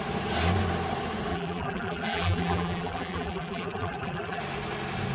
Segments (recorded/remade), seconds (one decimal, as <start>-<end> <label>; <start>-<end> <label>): 0.0-1.3 recorded; 1.3-4.4 remade; 4.4-5.1 recorded